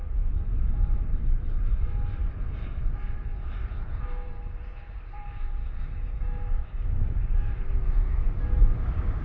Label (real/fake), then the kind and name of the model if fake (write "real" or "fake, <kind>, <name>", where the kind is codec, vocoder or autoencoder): fake, vocoder, BigVGAN v2